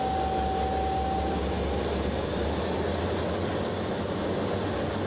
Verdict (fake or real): real